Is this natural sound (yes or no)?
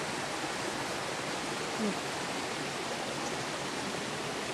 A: yes